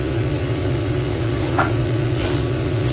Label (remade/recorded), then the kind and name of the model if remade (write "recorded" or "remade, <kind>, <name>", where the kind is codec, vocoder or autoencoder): remade, vocoder, Vocos